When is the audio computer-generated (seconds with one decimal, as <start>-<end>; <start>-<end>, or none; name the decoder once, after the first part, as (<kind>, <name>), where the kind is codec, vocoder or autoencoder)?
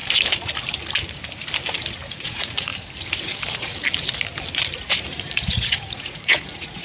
2.1-2.7 (vocoder, Vocos); 5.0-6.8